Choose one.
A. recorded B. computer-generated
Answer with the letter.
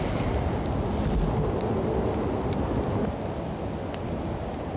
A